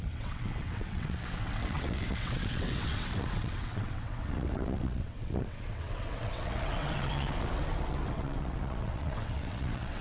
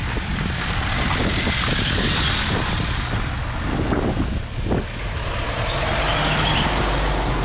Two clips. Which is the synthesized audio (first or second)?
first